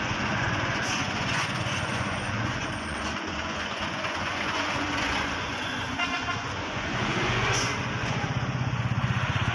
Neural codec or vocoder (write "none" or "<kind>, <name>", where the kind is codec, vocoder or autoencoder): vocoder, Vocos